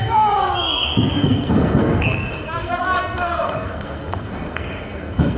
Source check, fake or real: fake